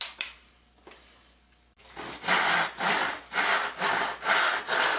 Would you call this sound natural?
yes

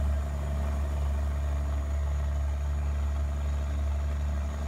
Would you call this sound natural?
yes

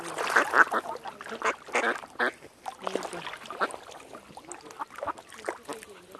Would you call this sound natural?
yes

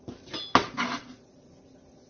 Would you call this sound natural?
yes